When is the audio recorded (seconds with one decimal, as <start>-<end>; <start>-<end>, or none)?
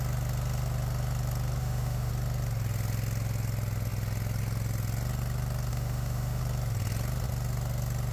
0.0-1.6; 2.1-5.7; 6.4-8.1